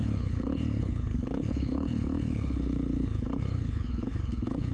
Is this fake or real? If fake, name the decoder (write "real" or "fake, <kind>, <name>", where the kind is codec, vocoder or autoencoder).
fake, codec, HILCodec